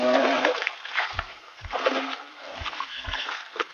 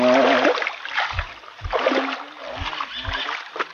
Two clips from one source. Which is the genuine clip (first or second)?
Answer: second